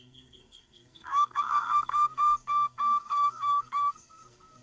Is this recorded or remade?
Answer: remade